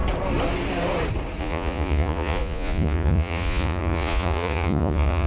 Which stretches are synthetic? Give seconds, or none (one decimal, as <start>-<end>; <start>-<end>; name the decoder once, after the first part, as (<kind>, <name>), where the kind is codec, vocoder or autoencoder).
1.4-5.3 (vocoder, Vocos)

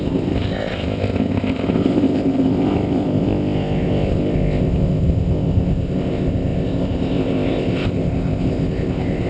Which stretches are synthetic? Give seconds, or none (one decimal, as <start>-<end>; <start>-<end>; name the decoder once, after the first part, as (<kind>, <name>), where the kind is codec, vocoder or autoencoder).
0.0-9.3 (codec, ZipCodec)

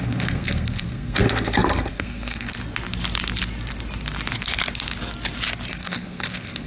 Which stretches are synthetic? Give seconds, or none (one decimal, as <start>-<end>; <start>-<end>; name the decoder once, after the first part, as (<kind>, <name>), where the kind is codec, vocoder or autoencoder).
0.0-2.5 (codec, SNAC); 5.7-6.7

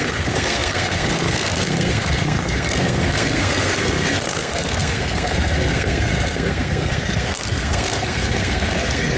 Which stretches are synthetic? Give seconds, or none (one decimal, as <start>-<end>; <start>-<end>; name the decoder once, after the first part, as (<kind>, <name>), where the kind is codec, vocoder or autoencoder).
0.0-9.2 (codec, SNAC)

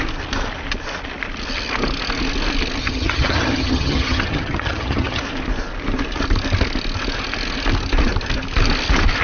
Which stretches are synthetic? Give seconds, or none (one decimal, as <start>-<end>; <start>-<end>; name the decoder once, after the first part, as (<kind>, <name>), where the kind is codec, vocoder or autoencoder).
2.8-5.2 (vocoder, HiFi-GAN)

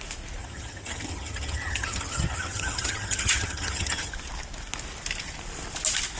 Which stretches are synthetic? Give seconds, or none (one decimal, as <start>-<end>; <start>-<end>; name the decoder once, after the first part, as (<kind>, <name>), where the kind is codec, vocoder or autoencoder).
0.4-4.1 (vocoder, HiFi-GAN)

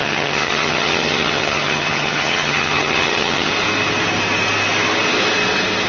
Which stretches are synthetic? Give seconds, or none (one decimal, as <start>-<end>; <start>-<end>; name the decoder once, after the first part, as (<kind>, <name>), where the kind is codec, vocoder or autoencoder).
0.0-3.5 (vocoder, HiFi-GAN)

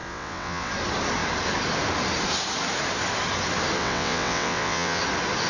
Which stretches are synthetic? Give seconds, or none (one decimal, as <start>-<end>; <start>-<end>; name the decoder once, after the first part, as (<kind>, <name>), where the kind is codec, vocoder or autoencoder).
0.0-0.7 (vocoder, WaveNeXt); 3.8-5.0